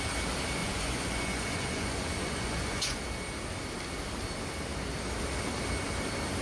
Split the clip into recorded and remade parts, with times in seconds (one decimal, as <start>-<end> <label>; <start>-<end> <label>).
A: 0.0-0.6 recorded; 0.6-3.0 remade; 3.0-6.4 recorded